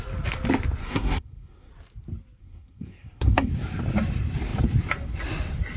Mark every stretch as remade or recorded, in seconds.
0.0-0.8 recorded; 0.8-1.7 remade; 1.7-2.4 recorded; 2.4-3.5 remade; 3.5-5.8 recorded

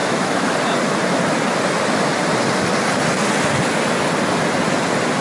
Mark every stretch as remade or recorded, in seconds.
0.0-0.5 remade; 0.5-5.2 recorded

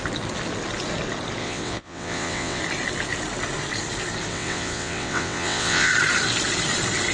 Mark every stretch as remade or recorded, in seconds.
0.0-1.4 recorded; 1.4-2.6 remade; 2.6-4.3 recorded; 4.3-5.9 remade; 5.9-7.1 recorded

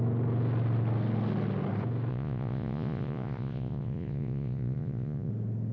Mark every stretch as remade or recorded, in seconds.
0.0-2.1 recorded; 2.1-5.3 remade; 5.3-5.7 recorded

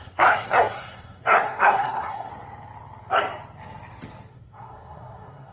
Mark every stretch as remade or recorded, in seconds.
0.0-2.3 remade; 2.3-4.3 recorded; 4.3-5.5 remade

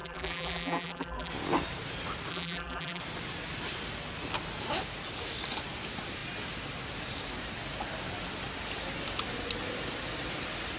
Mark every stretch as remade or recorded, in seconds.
0.0-1.3 remade; 1.3-2.3 recorded; 2.3-3.0 remade; 3.0-10.8 recorded

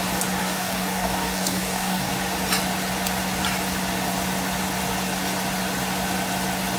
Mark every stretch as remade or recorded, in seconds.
0.0-0.4 recorded; 0.4-2.1 remade; 2.1-6.8 recorded